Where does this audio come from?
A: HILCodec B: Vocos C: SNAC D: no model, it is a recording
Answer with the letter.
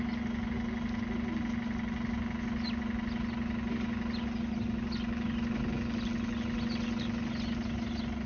D